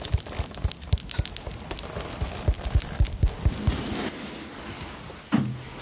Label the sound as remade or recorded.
recorded